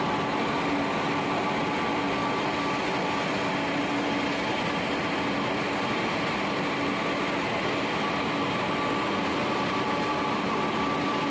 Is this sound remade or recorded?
recorded